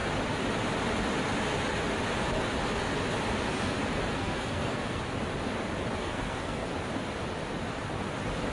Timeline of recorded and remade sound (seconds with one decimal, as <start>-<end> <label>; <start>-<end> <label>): 0.0-4.1 recorded; 4.1-5.0 remade; 5.0-6.0 recorded; 6.0-6.7 remade; 6.7-8.5 recorded